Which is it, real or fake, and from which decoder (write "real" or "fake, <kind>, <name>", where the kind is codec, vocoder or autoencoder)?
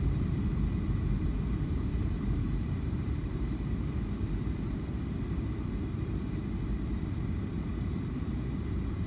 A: fake, vocoder, BigVGAN v2